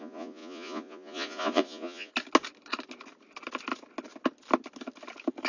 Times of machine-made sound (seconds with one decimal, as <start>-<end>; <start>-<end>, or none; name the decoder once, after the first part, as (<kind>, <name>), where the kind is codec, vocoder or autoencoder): 0.0-2.1 (vocoder, Vocos)